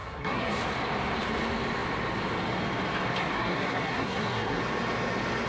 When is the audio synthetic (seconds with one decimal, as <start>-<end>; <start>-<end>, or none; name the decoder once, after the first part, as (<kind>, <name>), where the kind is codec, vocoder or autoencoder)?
0.0-0.6 (codec, SNAC); 3.2-4.6